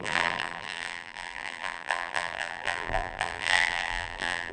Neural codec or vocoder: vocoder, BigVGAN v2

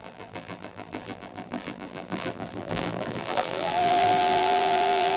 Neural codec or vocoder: vocoder, BigVGAN v2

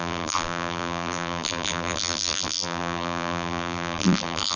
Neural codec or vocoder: vocoder, BigVGAN v2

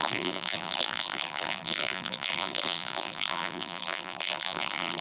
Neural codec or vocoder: vocoder, BigVGAN v2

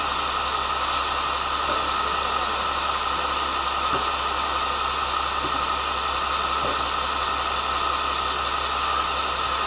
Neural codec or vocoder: none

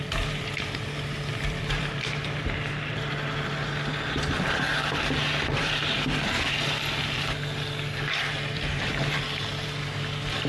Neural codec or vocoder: vocoder, BigVGAN v2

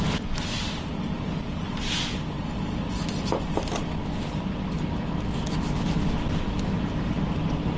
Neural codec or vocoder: none